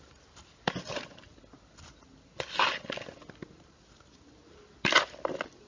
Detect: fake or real real